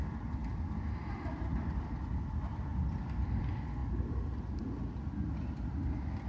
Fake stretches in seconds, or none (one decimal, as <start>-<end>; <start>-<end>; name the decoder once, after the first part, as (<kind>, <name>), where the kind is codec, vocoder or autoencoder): none